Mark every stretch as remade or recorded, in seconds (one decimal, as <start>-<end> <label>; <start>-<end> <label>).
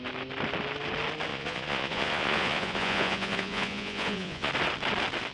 0.0-1.3 recorded; 1.3-4.5 remade; 4.5-5.3 recorded